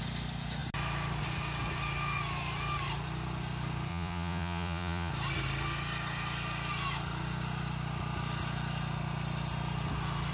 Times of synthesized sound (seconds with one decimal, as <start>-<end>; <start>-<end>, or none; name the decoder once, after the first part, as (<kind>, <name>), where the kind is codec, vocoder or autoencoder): 3.9-5.1 (vocoder, Vocos)